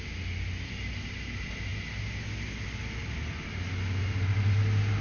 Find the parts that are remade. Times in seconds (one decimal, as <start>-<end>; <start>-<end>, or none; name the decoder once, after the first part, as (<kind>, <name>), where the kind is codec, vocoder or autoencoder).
none